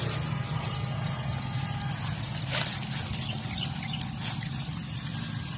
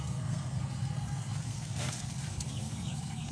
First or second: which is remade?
second